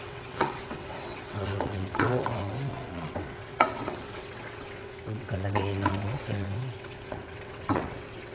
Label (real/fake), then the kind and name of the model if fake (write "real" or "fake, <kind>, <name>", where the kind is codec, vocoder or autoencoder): fake, vocoder, WaveNeXt